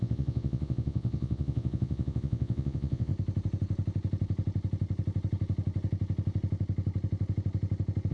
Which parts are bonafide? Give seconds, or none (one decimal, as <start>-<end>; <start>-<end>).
3.1-8.1